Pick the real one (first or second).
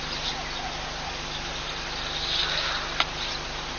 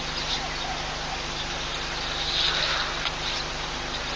second